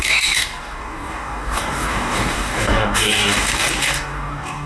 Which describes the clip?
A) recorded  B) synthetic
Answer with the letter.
B